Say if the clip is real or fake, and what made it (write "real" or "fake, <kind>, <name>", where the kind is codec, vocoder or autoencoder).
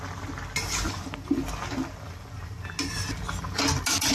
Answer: real